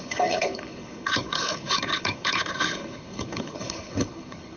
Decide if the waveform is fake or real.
fake